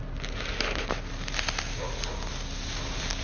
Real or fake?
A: real